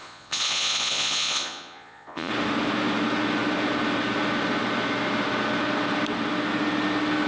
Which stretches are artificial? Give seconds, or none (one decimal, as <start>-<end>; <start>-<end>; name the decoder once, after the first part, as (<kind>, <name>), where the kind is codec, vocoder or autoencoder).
0.0-2.3 (vocoder, Vocos)